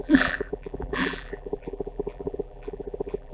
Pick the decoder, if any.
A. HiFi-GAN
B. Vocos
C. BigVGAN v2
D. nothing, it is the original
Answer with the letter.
C